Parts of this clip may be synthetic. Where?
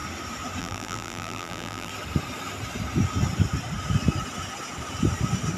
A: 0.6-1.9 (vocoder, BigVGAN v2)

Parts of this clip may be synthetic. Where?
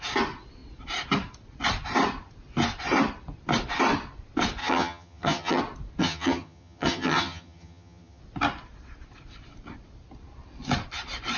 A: 4.6-5.6 (vocoder, HiFi-GAN); 6.0-8.2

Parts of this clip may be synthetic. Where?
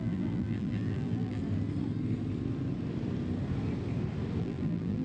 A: 0.0-1.4 (vocoder, BigVGAN v2); 4.4-5.0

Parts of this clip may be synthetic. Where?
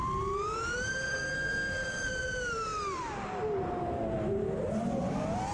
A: 1.1-2.1 (codec, SNAC)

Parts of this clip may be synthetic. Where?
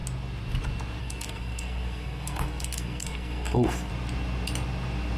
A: 1.0-3.9 (codec, SNAC)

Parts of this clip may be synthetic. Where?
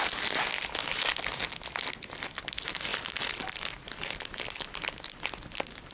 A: 2.9-3.9 (vocoder, BigVGAN v2)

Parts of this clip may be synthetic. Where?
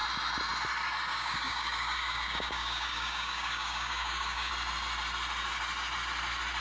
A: 1.1-4.5 (codec, DAC)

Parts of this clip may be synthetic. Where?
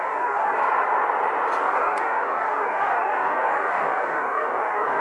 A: 0.0-0.6 (codec, DAC); 1.6-5.0